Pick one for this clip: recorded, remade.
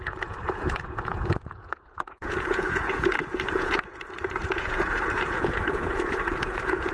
remade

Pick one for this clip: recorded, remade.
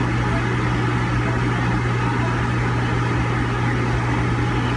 recorded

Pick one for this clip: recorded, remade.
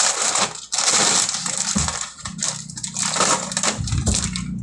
recorded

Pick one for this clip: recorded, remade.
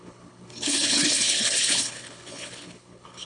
remade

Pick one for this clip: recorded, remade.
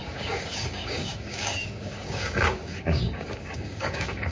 remade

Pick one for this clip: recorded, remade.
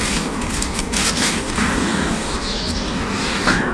remade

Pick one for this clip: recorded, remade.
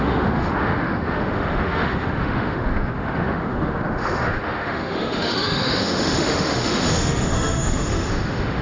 remade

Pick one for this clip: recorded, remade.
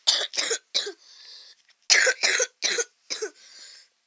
recorded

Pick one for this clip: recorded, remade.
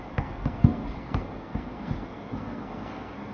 remade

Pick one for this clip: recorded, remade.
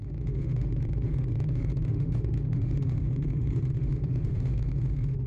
remade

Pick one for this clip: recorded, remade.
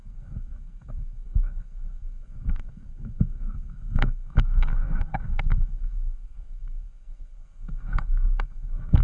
remade